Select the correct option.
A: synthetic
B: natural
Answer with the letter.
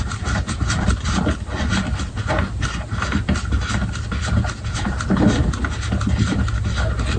B